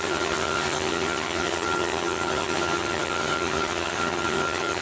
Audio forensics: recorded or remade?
remade